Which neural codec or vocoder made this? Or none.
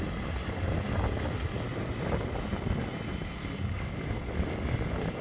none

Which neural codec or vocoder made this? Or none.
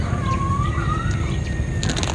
none